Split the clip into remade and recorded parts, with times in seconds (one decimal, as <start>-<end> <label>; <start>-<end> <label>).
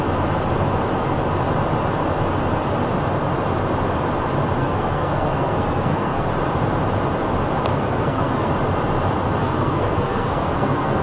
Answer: 0.0-4.6 recorded; 4.6-6.3 remade; 6.3-7.7 recorded; 7.7-8.5 remade; 8.5-9.4 recorded; 9.4-11.0 remade